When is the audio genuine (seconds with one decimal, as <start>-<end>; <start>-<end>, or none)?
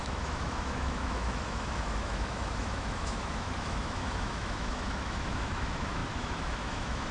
none